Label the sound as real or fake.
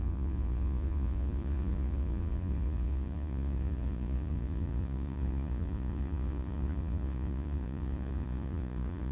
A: fake